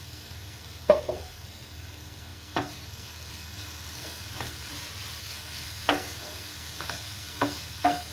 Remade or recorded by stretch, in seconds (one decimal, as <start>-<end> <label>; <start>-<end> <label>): 0.0-4.7 remade; 4.7-5.2 recorded; 5.2-8.1 remade

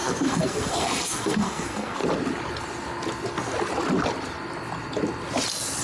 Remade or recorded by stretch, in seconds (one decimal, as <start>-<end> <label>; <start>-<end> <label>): 0.0-2.0 remade; 2.0-5.8 recorded